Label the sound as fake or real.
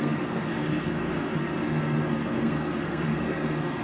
fake